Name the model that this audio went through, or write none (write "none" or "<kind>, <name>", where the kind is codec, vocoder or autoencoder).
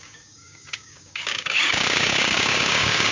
codec, DAC